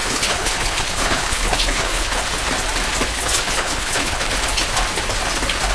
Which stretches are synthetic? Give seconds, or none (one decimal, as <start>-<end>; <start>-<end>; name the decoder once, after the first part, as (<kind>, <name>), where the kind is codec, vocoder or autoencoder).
0.0-2.2 (codec, HILCodec); 3.1-4.3